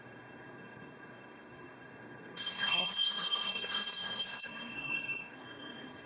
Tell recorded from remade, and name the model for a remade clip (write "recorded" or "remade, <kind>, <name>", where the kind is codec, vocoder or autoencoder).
remade, codec, SNAC